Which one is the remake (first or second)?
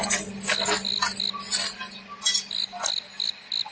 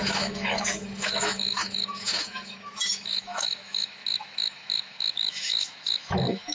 second